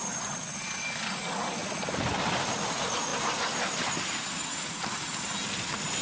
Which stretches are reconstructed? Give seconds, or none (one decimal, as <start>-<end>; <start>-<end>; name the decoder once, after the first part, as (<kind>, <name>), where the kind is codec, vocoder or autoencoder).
none